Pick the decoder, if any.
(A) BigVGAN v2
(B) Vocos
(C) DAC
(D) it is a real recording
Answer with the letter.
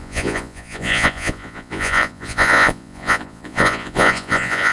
B